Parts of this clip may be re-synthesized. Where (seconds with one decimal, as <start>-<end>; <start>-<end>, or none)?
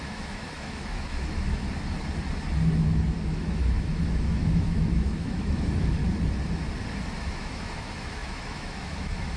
0.0-1.5; 3.2-6.0; 7.2-9.4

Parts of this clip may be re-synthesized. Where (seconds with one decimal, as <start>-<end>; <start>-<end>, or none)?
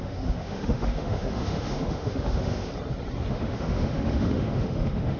0.0-2.7; 3.3-5.2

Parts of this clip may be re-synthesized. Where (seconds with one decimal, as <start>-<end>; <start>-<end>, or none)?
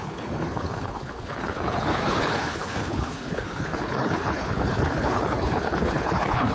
0.0-6.5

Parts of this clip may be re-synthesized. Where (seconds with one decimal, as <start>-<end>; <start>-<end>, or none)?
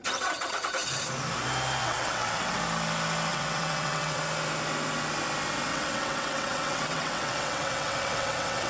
0.0-0.7; 1.8-2.6; 3.3-4.2; 5.7-8.7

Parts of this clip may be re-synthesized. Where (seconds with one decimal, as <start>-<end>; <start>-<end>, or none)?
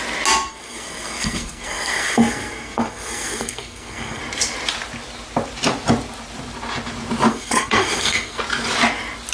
0.5-4.2; 7.3-8.4